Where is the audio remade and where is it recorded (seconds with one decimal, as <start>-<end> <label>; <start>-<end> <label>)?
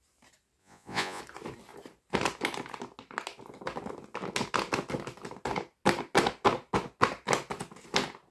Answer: 0.0-0.6 recorded; 0.6-1.2 remade; 1.2-8.3 recorded